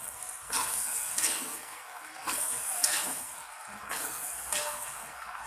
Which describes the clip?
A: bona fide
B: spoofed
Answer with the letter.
B